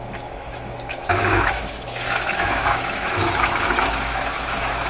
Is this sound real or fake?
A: fake